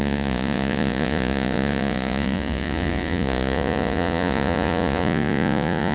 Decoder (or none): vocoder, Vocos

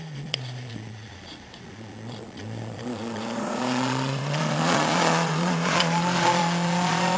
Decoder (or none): vocoder, Vocos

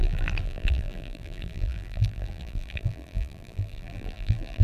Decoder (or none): vocoder, BigVGAN v2